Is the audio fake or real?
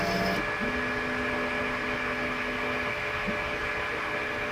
real